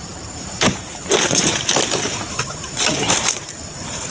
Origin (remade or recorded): remade